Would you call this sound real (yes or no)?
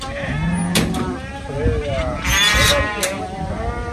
yes